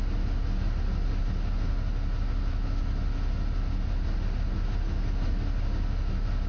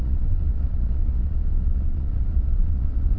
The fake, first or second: second